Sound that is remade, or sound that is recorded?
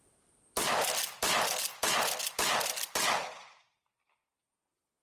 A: recorded